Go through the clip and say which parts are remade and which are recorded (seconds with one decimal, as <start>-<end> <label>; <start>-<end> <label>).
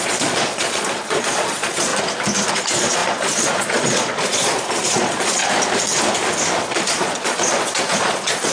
0.0-1.9 remade; 1.9-2.5 recorded; 2.5-5.4 remade; 5.4-6.6 recorded; 6.6-8.5 remade